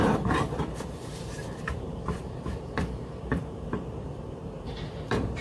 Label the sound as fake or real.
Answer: fake